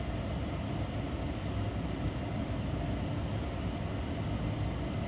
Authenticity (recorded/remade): recorded